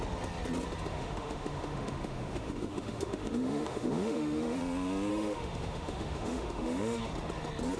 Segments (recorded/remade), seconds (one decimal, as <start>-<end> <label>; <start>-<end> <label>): 0.0-0.9 recorded; 0.9-4.6 remade; 4.6-5.1 recorded; 5.1-7.0 remade; 7.0-7.8 recorded

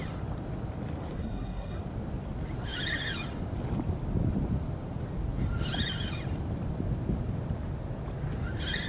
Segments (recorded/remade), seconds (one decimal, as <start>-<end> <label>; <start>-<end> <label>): 0.0-1.2 recorded; 1.2-1.8 remade; 1.8-8.9 recorded

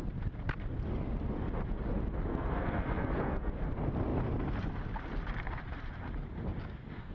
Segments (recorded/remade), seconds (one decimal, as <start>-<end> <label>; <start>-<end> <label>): 0.0-2.3 recorded; 2.3-3.5 remade; 3.5-7.1 recorded

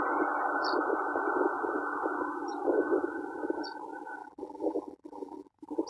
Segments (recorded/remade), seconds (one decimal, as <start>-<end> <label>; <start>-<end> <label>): 0.0-4.2 recorded; 4.2-5.5 remade; 5.5-5.9 recorded

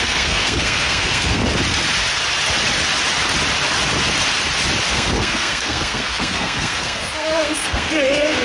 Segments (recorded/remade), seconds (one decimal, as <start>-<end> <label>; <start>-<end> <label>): 0.0-1.4 remade; 1.4-4.9 recorded; 4.9-8.4 remade